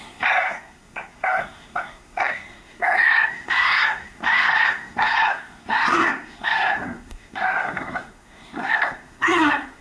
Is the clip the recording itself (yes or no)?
no